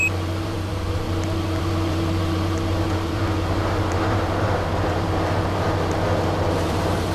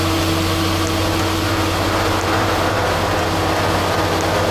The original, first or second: second